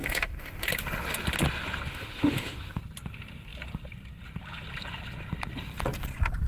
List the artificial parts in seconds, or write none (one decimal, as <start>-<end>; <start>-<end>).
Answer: 0.0-0.7; 1.9-2.8